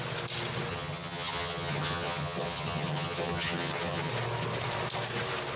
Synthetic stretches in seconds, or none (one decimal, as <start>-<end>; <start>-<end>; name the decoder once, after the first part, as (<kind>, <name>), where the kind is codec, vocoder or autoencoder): 0.7-4.1 (vocoder, HiFi-GAN)